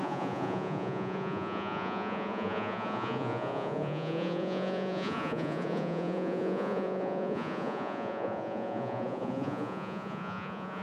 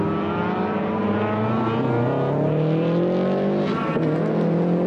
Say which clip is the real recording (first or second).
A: second